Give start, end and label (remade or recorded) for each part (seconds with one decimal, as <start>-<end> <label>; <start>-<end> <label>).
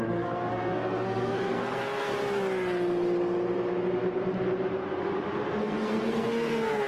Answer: 0.0-2.1 remade; 2.1-5.6 recorded; 5.6-6.9 remade